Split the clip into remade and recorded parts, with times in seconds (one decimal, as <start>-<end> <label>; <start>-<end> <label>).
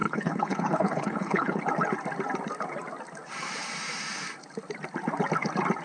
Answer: 0.0-1.6 remade; 1.6-5.8 recorded